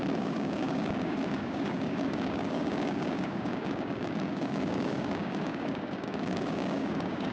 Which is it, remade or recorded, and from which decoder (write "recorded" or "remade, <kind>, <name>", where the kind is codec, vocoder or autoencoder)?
remade, codec, DAC